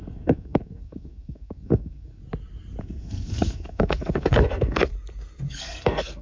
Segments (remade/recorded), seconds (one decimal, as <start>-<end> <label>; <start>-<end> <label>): 0.0-2.2 remade; 2.2-2.8 recorded; 2.8-4.9 remade; 4.9-5.5 recorded; 5.5-6.2 remade